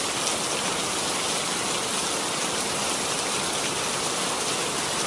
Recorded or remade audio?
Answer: recorded